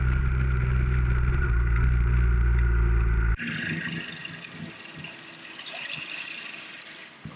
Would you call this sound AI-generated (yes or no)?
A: no